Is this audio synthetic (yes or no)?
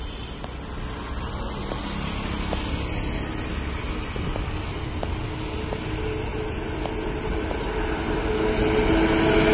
no